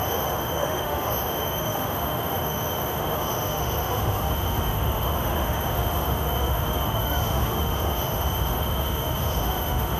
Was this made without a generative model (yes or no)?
no